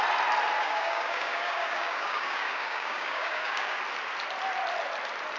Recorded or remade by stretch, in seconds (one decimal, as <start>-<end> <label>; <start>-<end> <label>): 0.0-0.6 recorded; 0.6-3.8 remade; 3.8-5.4 recorded